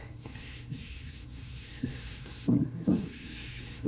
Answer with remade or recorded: remade